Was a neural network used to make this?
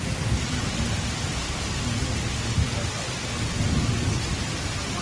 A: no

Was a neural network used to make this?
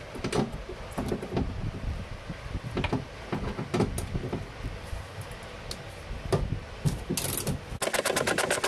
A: no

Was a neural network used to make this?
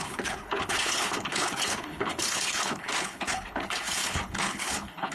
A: yes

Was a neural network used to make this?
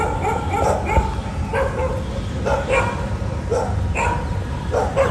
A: no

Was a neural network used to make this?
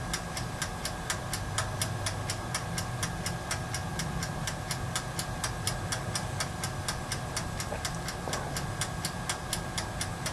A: no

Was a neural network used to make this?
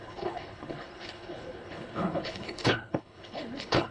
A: yes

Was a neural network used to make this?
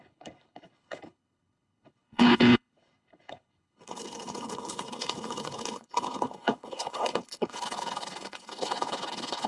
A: yes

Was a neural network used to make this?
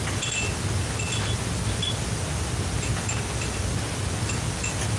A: no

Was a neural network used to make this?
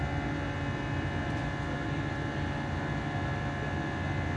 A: no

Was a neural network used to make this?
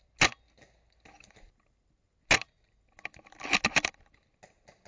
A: no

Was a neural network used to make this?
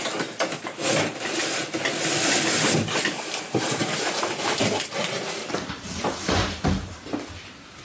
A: no